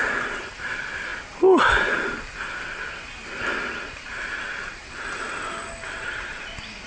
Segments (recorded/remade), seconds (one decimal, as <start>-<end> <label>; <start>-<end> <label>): 0.0-6.9 recorded